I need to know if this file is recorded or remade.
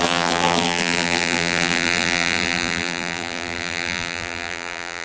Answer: remade